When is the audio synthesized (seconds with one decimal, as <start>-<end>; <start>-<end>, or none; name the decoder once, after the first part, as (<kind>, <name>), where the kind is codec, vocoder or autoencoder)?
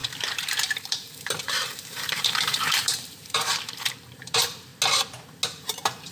0.0-4.7 (vocoder, BigVGAN v2); 5.6-6.1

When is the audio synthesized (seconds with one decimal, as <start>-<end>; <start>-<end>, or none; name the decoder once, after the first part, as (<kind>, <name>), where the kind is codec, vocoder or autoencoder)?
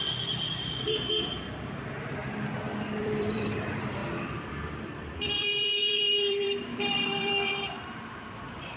0.0-2.2 (vocoder, BigVGAN v2); 3.0-8.8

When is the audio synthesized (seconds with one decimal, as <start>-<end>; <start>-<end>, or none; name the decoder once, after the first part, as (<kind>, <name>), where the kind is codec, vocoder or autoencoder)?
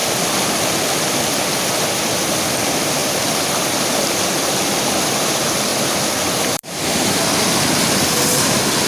1.3-8.9 (vocoder, BigVGAN v2)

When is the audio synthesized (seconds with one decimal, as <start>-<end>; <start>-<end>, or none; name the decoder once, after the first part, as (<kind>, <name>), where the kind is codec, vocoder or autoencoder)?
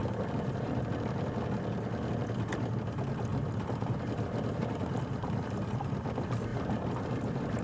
0.0-0.8 (vocoder, BigVGAN v2); 3.3-5.9; 6.5-7.6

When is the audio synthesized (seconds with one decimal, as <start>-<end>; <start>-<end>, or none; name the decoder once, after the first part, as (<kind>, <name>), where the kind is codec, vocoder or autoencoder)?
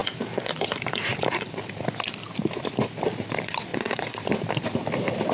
0.0-1.8 (vocoder, BigVGAN v2); 3.7-4.5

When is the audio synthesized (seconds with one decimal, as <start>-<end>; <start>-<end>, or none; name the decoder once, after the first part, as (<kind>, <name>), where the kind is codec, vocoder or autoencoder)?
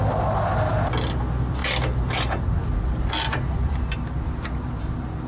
none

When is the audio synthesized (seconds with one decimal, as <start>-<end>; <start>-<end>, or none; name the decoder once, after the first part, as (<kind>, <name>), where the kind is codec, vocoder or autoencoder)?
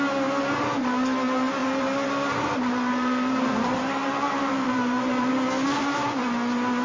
1.6-5.3 (vocoder, BigVGAN v2)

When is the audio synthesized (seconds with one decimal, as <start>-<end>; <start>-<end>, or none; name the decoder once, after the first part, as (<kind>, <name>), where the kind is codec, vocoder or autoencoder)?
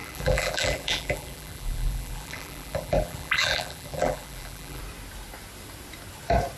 0.0-4.8 (vocoder, BigVGAN v2)